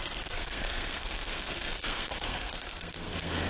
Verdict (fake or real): fake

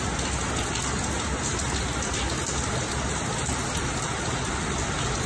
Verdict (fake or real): real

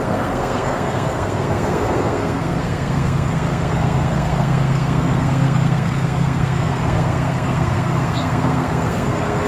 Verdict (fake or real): fake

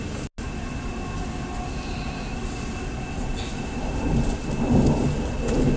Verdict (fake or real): real